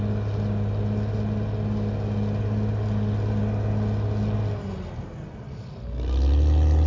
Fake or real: real